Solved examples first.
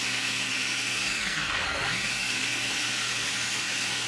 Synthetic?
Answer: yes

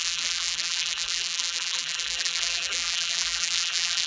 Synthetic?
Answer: yes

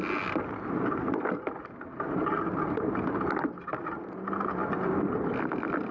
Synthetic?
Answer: no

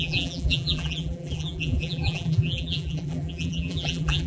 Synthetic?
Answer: yes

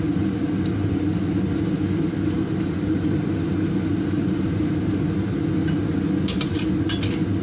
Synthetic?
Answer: no